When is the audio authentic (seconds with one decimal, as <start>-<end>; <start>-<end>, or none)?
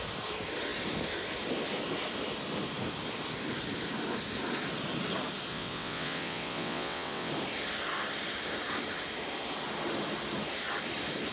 0.0-5.5; 7.3-11.3